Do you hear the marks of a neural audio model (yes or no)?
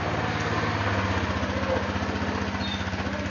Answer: no